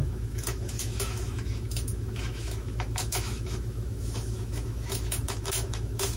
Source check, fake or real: fake